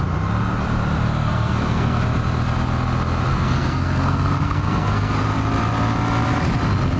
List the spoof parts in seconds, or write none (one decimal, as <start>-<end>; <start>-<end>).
1.1-2.0; 3.3-5.3